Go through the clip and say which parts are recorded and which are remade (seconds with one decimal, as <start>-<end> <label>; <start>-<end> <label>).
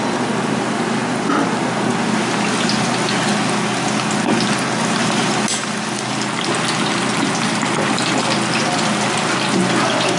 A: 0.0-10.2 recorded